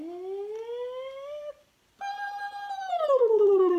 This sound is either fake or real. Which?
real